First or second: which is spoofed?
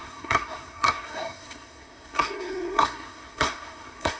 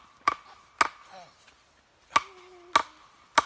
first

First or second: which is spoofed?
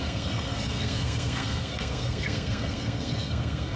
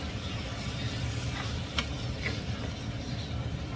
first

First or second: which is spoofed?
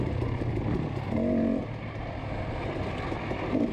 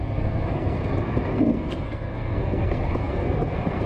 second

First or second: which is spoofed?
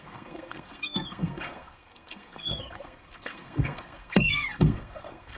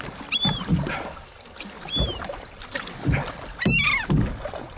first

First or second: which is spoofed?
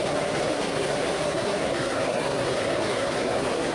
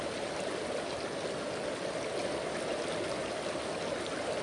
first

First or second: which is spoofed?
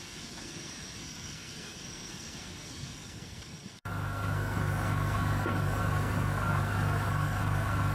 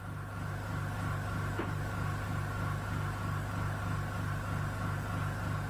first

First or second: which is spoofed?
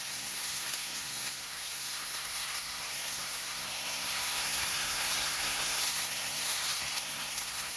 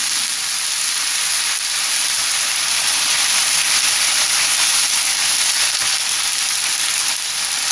first